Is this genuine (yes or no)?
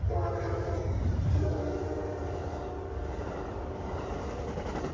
no